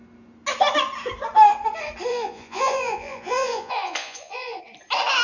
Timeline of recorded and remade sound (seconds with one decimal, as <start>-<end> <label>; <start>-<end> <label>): 0.0-2.1 recorded; 2.1-4.6 remade; 4.6-5.2 recorded